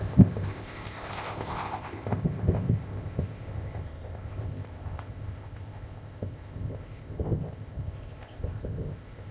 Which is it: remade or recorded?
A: remade